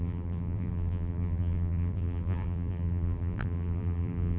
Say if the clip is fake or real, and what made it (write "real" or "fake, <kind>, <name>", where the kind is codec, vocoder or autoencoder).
fake, vocoder, BigVGAN v2